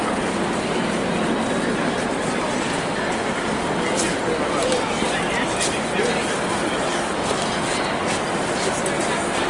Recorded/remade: recorded